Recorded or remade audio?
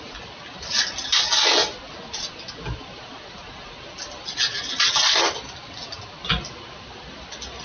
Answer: recorded